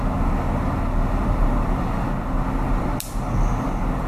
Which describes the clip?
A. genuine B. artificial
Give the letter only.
A